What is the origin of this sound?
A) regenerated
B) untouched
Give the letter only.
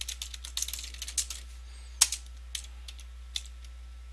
B